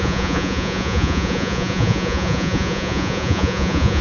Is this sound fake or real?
fake